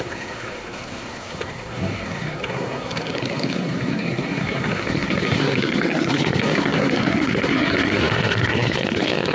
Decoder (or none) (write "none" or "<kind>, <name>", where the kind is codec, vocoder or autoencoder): codec, SNAC